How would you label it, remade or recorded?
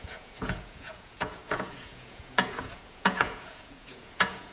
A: remade